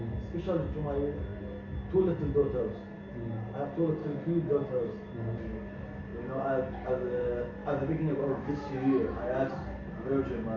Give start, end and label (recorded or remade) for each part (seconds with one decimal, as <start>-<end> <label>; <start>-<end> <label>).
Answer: 0.0-4.0 recorded; 4.0-5.1 remade; 5.1-7.6 recorded; 7.6-9.5 remade; 9.5-10.6 recorded